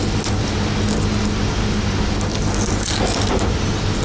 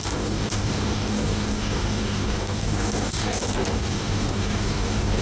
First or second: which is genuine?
first